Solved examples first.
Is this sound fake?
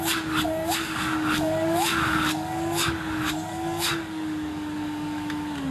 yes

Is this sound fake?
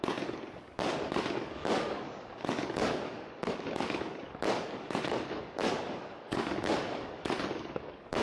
yes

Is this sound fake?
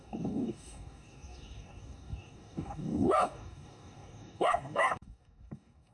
yes